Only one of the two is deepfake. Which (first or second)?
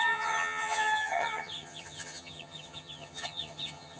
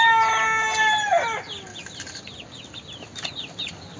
first